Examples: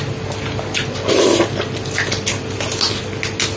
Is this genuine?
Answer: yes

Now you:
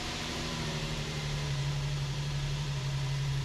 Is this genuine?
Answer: no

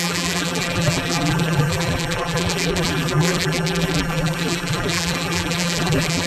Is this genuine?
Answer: no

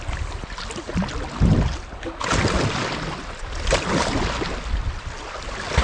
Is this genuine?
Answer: yes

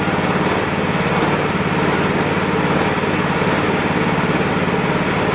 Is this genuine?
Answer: yes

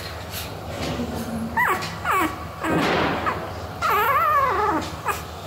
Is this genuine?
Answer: yes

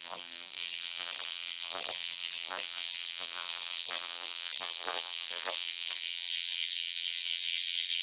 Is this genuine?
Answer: no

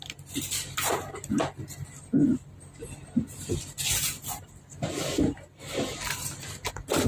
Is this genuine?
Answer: yes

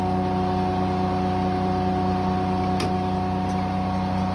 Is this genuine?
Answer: yes